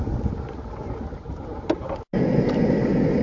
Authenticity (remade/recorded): recorded